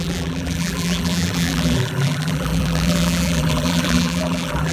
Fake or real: fake